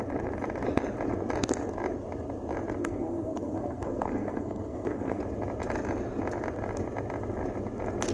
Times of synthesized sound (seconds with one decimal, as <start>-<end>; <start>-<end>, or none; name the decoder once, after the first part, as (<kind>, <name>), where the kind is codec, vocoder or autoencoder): 2.8-5.2 (codec, SNAC)